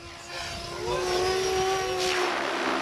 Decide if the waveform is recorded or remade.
recorded